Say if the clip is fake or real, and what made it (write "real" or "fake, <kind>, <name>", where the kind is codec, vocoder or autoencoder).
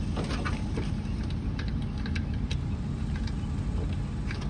real